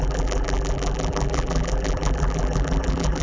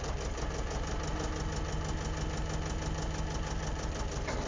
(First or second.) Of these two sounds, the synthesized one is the first